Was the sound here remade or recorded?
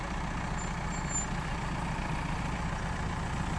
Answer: recorded